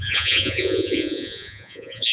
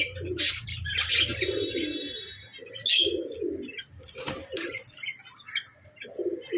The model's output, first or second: first